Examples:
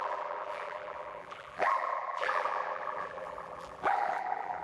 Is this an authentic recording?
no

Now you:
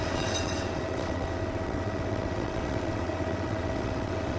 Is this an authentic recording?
no